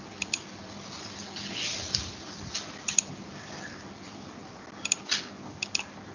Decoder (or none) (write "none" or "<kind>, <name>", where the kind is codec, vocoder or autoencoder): none